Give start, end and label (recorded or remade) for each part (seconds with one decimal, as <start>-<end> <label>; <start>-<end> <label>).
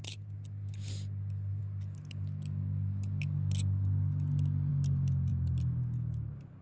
0.0-6.6 recorded